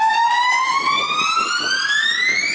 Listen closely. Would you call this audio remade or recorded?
recorded